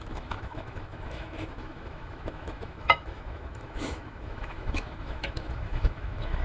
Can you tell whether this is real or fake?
fake